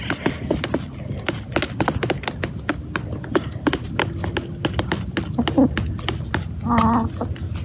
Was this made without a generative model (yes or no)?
yes